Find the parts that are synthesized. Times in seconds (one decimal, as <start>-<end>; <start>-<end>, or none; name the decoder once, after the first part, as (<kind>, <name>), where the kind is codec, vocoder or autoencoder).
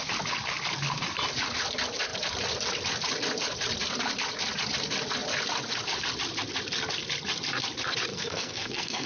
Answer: 8.1-9.1 (codec, SNAC)